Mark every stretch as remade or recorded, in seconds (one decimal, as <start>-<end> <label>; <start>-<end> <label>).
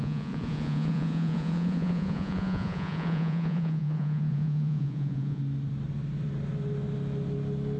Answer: 0.0-5.4 remade; 5.4-7.8 recorded